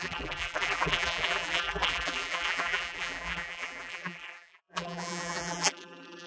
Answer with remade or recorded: remade